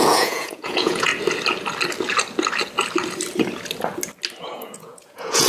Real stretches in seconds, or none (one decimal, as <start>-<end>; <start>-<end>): 1.1-4.4